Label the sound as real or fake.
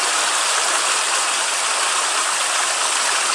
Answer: real